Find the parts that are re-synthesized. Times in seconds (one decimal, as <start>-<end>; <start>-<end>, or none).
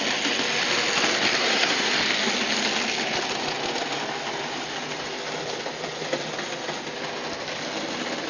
1.4-1.9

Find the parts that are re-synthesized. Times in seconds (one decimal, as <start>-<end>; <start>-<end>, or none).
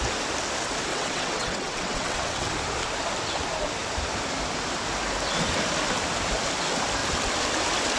0.9-2.5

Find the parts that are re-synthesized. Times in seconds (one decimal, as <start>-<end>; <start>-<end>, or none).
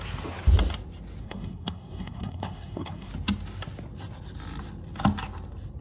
1.2-3.1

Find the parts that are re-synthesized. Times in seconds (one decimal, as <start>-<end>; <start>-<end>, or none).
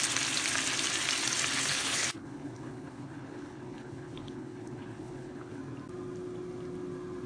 1.7-5.6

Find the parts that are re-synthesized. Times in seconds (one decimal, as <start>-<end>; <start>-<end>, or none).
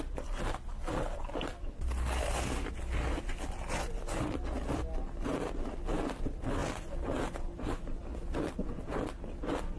none